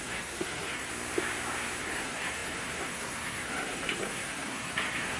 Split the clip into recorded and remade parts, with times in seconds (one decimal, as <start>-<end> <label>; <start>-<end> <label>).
0.0-0.9 remade; 0.9-1.8 recorded; 1.8-5.2 remade